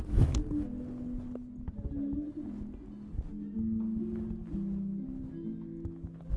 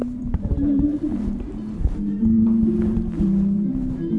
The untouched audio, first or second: first